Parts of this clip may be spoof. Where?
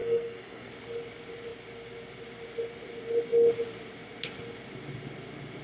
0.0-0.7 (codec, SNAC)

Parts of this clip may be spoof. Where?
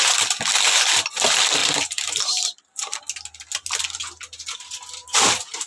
1.6-3.0 (vocoder, BigVGAN v2); 5.0-5.7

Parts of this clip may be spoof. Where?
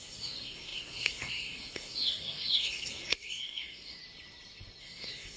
0.0-4.0 (codec, SNAC); 4.8-5.4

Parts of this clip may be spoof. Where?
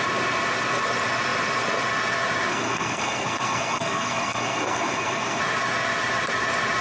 2.5-5.4 (codec, SNAC)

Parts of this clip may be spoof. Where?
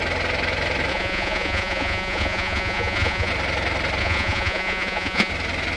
0.9-3.3 (vocoder, Vocos); 4.0-5.3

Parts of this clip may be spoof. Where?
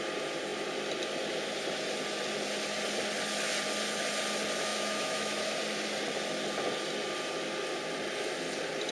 4.7-5.6 (autoencoder, DAC-VAE)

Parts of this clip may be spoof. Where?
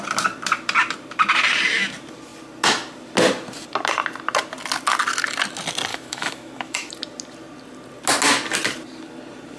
5.9-6.9 (autoencoder, DAC-VAE)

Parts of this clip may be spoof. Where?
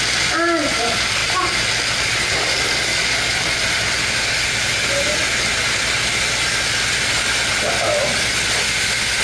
8.6-9.2 (autoencoder, DAC-VAE)